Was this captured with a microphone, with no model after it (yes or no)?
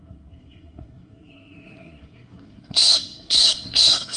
no